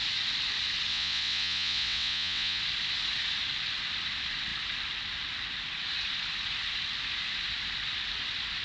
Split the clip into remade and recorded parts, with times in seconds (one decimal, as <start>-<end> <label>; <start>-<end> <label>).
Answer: 0.0-0.9 recorded; 0.9-2.6 remade; 2.6-8.6 recorded